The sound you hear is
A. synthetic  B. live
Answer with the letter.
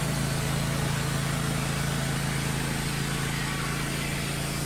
B